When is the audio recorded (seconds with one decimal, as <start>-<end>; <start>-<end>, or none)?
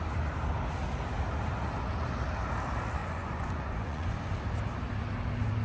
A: 0.0-3.0; 4.2-5.6